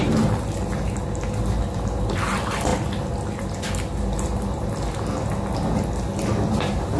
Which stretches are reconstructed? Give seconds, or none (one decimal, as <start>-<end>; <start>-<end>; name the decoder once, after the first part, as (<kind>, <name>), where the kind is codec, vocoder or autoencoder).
none